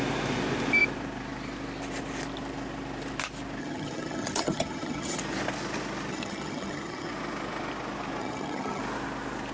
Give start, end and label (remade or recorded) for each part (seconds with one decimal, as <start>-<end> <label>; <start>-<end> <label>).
0.0-3.6 recorded; 3.6-5.2 remade; 5.2-6.1 recorded; 6.1-7.1 remade; 7.1-8.2 recorded; 8.2-8.8 remade; 8.8-9.5 recorded